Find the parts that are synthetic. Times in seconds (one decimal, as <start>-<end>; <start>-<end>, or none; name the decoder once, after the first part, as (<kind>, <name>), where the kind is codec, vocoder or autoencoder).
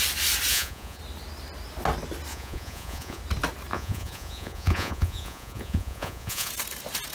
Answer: 0.5-1.0 (vocoder, Vocos); 2.3-3.2; 3.7-6.5